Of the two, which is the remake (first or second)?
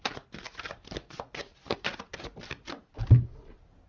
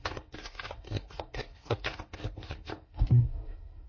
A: second